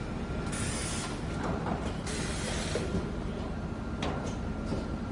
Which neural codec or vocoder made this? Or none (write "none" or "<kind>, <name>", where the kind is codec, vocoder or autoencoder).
none